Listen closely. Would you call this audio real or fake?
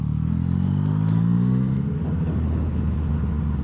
real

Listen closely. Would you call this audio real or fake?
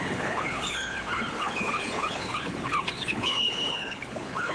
fake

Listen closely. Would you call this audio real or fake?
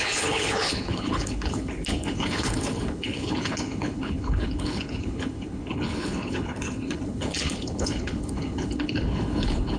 fake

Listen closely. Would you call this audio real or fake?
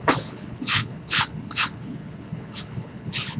fake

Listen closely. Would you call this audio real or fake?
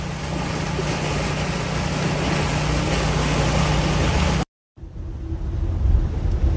real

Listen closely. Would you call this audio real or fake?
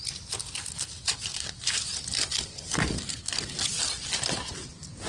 real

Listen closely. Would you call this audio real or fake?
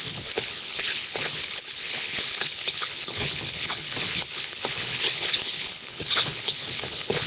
fake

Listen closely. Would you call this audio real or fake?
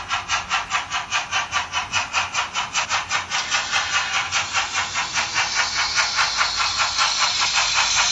real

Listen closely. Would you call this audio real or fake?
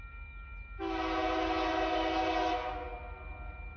real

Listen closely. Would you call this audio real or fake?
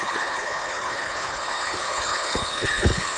fake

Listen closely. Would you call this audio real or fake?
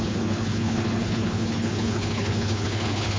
fake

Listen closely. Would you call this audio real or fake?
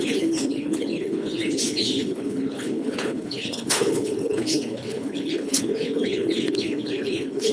fake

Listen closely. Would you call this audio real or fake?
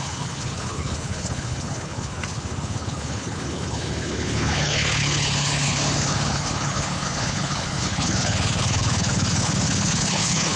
fake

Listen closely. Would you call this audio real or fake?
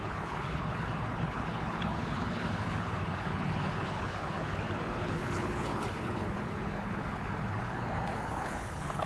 fake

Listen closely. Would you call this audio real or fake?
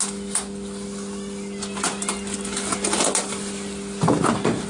real